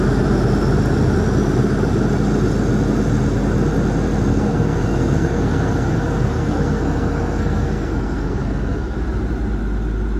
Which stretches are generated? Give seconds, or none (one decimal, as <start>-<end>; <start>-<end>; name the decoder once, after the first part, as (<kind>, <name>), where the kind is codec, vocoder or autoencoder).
4.3-9.0 (codec, SNAC)